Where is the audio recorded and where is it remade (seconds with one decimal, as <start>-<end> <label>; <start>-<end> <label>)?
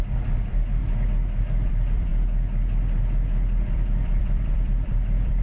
0.0-0.8 remade; 0.8-1.4 recorded; 1.4-2.1 remade; 2.1-3.6 recorded; 3.6-5.4 remade